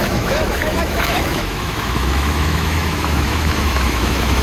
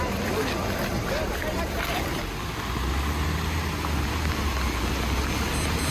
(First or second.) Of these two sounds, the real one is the second